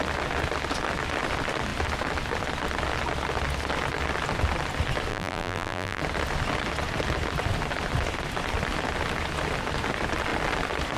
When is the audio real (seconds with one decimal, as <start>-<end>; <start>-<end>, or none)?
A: 0.0-5.1; 6.0-11.0